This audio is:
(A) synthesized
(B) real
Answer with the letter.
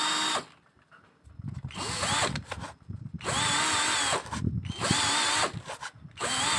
B